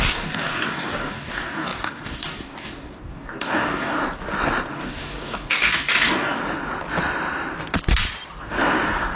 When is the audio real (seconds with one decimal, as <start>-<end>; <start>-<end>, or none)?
4.0-4.7; 6.4-9.2